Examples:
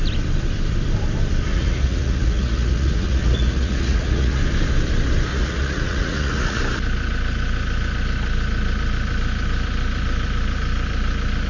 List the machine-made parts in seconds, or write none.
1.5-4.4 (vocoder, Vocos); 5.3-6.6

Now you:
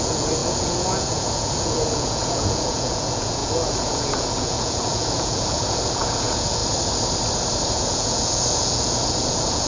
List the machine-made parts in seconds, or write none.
0.0-6.6 (vocoder, Vocos); 7.7-9.7